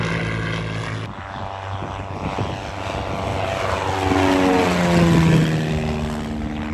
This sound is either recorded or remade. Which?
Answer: recorded